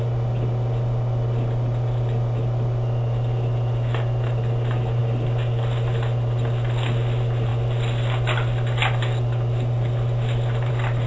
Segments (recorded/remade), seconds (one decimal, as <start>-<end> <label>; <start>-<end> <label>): 0.0-11.1 recorded

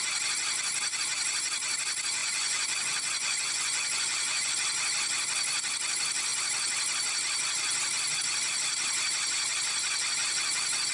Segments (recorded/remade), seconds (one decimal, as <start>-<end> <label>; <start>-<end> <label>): 0.0-2.2 recorded; 2.2-4.5 remade; 4.5-10.9 recorded

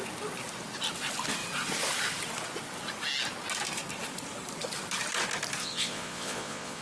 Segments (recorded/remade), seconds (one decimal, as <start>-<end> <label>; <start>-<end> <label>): 0.0-5.6 recorded; 5.6-6.8 remade

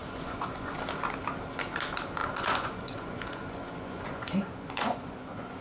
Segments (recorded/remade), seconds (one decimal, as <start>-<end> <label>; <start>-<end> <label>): 0.0-0.8 remade; 0.8-2.2 recorded; 2.2-5.6 remade

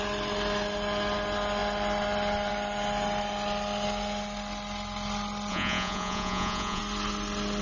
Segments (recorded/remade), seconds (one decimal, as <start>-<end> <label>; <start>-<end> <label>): 0.0-5.5 recorded; 5.5-6.8 remade; 6.8-7.6 recorded